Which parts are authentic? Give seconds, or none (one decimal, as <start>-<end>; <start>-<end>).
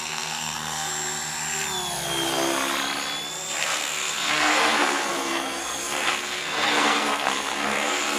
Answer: 0.9-3.6